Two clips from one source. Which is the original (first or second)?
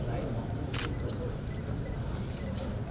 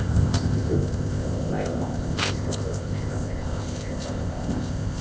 first